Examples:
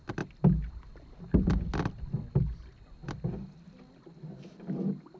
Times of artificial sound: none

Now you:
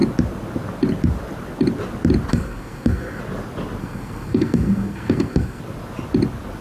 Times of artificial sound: 2.3-3.2 (codec, SNAC); 3.8-5.6

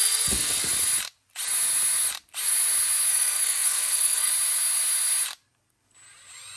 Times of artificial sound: 0.0-0.7 (codec, SNAC); 3.1-4.3

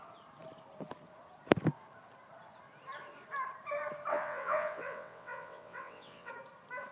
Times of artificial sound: 4.1-6.3 (vocoder, WaveNeXt)

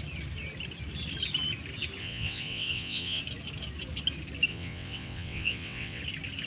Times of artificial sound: 2.0-3.2 (vocoder, WaveNeXt); 4.5-6.0

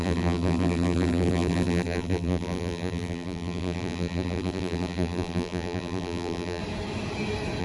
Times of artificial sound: 0.0-6.6 (vocoder, BigVGAN v2)

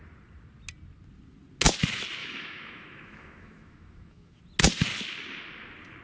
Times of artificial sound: 2.2-4.4 (autoencoder, DAC-VAE)